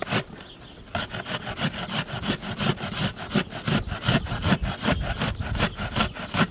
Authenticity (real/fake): real